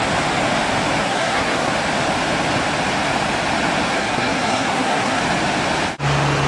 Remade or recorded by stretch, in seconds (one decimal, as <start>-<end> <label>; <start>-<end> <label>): 0.0-1.0 recorded; 1.0-1.7 remade; 1.7-3.9 recorded; 3.9-5.2 remade; 5.2-6.5 recorded